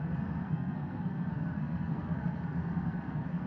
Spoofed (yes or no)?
yes